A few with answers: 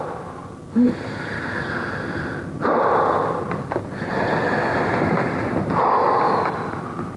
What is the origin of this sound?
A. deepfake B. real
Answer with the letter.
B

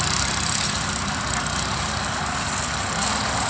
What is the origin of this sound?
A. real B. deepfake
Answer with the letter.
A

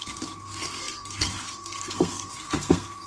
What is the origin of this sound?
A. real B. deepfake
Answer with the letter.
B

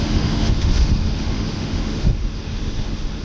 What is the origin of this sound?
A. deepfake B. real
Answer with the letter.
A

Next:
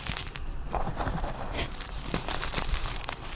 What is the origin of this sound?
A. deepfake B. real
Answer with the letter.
A